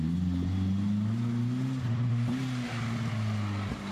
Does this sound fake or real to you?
real